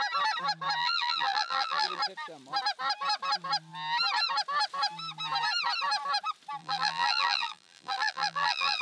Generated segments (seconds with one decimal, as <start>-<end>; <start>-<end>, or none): 0.8-2.0; 6.6-8.8

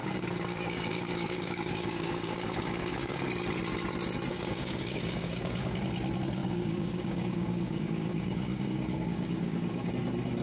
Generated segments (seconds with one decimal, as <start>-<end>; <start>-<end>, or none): 0.0-3.3; 4.3-5.8; 6.4-9.9

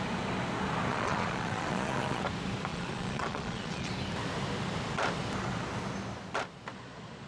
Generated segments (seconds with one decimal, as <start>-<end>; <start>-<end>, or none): 0.9-2.2; 2.7-3.9; 6.7-7.3

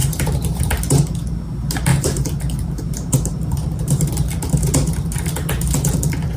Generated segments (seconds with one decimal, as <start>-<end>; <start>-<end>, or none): 0.0-0.6; 1.9-4.1

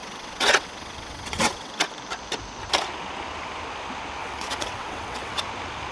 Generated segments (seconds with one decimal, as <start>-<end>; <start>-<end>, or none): 0.0-1.9; 4.2-5.4